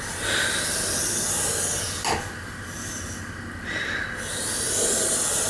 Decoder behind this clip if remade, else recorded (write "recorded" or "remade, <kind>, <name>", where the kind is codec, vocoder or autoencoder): recorded